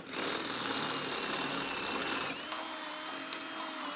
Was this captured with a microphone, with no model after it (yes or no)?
yes